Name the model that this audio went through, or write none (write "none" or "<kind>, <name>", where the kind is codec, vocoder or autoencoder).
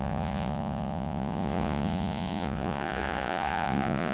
vocoder, Vocos